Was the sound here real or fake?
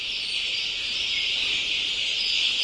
real